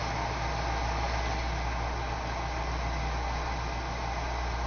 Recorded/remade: recorded